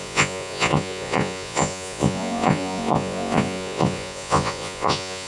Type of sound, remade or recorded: remade